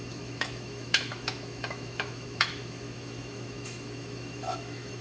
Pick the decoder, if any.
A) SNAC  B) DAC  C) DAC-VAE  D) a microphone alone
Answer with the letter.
C